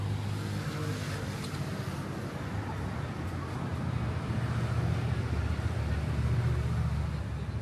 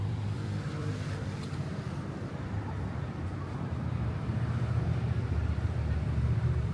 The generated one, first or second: second